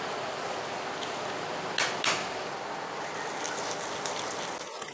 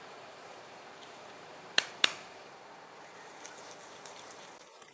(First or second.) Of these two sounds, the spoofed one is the second